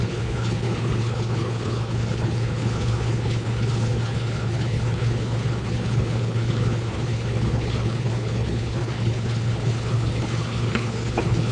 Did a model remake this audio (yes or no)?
yes